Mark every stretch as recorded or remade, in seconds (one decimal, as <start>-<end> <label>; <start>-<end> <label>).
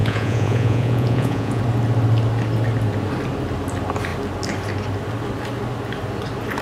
0.0-1.6 remade; 1.6-6.6 recorded